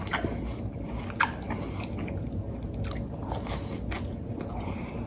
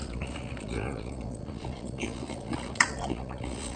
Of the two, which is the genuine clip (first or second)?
first